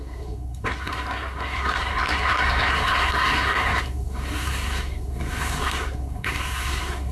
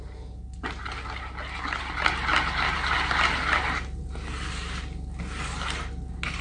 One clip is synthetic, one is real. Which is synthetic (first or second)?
first